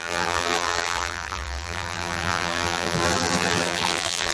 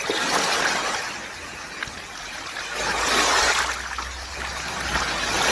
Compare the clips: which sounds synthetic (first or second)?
first